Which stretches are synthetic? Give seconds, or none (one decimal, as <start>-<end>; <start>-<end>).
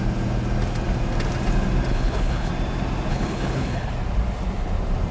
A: 1.9-2.5; 3.1-3.9